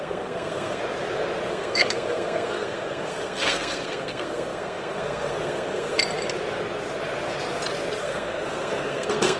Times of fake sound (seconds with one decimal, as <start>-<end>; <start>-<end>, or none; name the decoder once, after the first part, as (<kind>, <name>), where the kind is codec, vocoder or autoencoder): 0.0-0.8 (codec, SNAC); 1.5-6.0; 8.0-9.4